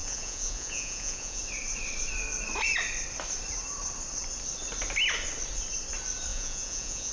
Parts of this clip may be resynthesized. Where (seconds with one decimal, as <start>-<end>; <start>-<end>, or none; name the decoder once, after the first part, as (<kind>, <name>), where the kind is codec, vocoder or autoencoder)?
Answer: 0.0-1.4 (vocoder, Vocos); 6.3-7.1